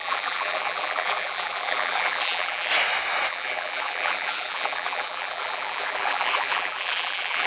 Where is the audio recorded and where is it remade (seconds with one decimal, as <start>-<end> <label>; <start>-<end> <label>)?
0.0-2.7 remade; 2.7-3.3 recorded; 3.3-7.5 remade